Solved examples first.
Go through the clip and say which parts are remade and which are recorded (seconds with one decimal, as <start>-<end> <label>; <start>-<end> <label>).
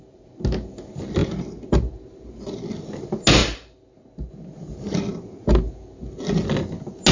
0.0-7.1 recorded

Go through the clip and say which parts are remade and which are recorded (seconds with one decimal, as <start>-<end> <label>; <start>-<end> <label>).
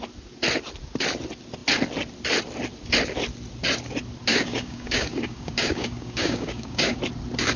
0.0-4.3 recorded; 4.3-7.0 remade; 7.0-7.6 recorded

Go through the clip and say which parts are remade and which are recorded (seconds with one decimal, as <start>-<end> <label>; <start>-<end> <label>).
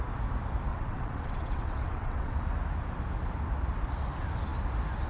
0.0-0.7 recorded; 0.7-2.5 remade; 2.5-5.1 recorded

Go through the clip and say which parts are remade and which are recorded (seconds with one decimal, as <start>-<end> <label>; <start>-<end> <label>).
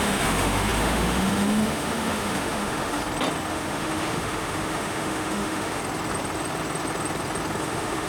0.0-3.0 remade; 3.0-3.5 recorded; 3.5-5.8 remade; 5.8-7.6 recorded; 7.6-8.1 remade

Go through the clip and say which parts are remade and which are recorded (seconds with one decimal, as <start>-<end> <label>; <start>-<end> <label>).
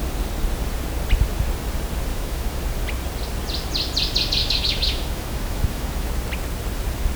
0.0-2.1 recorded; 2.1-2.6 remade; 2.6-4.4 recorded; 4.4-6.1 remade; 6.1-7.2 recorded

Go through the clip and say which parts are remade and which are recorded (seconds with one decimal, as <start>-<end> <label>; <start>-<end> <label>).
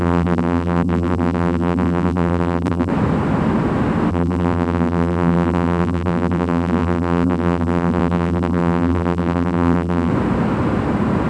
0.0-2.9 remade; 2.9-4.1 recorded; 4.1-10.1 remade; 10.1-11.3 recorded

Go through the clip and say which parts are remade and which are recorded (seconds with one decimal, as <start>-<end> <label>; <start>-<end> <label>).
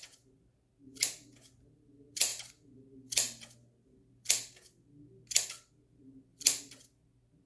0.0-7.5 recorded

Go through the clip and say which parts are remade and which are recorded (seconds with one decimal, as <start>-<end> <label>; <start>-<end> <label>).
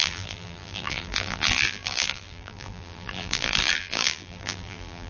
0.0-5.1 remade